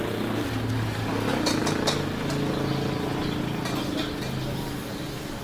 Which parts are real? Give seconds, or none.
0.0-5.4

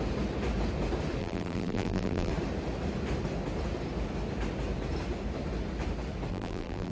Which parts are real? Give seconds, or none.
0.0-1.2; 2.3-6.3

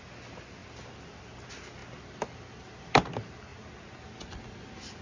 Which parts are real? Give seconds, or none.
0.0-1.8; 2.8-5.0

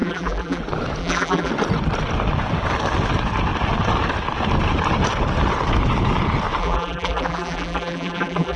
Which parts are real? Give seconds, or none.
0.6-1.0; 1.5-6.6

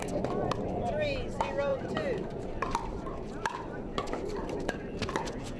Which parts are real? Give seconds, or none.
0.0-1.7; 4.6-5.6

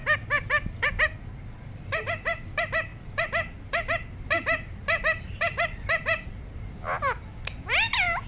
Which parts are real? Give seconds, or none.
none

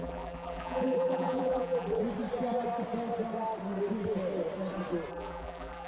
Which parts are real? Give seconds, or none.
2.0-5.1